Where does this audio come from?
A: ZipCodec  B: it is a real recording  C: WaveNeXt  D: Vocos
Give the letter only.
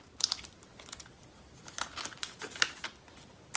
B